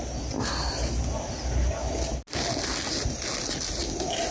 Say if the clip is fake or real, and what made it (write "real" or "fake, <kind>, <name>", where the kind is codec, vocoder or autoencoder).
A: real